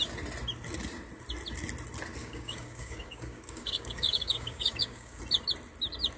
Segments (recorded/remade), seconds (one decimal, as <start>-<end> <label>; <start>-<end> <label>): 0.0-2.2 recorded; 2.2-5.2 remade; 5.2-6.2 recorded